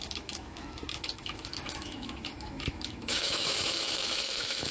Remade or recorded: remade